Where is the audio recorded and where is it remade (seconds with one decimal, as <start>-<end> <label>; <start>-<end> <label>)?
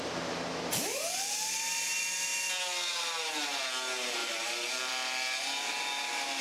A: 0.0-4.2 recorded; 4.2-4.9 remade; 4.9-6.4 recorded